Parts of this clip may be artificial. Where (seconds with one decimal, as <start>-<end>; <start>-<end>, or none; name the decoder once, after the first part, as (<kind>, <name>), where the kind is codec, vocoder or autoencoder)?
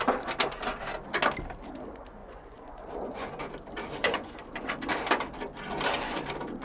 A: 2.2-3.5 (vocoder, Vocos); 4.0-4.7